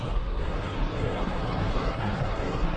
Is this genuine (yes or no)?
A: no